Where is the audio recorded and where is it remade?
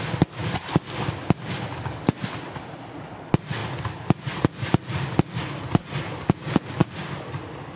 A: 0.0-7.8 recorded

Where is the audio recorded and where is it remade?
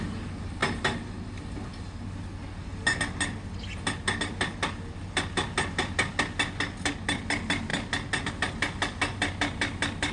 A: 0.0-10.1 recorded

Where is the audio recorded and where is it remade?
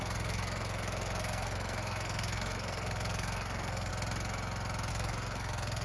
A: 0.0-3.9 remade; 3.9-4.9 recorded; 4.9-5.8 remade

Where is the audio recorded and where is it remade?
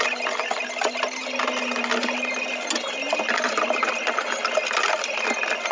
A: 0.0-5.7 recorded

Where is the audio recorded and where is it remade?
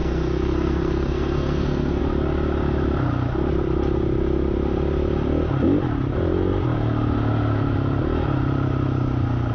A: 0.0-2.0 remade; 2.0-9.5 recorded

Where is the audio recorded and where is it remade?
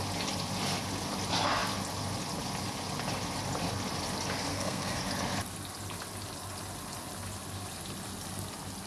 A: 0.0-4.5 recorded; 4.5-5.0 remade; 5.0-8.9 recorded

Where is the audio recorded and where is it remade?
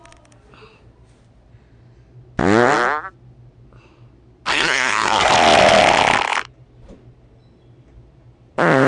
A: 0.0-4.5 recorded; 4.5-5.3 remade; 5.3-8.9 recorded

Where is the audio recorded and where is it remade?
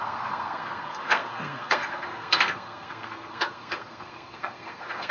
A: 0.0-5.1 remade